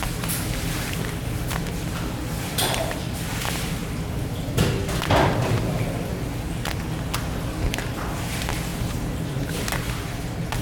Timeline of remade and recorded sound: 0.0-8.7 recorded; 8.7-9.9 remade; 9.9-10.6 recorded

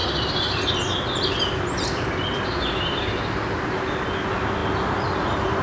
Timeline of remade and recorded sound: 0.0-5.6 recorded